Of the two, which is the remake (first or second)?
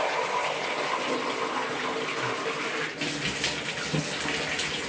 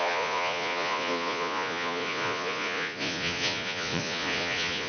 second